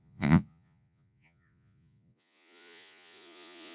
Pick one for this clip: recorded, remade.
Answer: remade